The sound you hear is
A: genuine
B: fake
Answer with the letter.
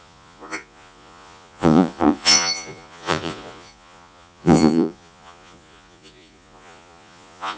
B